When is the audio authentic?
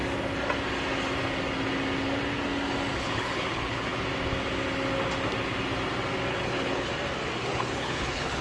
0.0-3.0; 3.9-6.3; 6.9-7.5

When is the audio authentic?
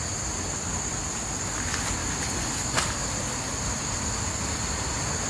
0.0-5.3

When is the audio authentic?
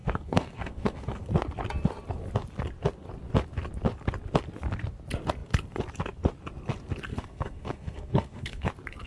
1.3-7.1; 8.7-9.1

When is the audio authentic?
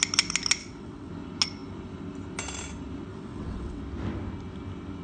0.0-0.6; 1.1-3.1; 3.8-5.0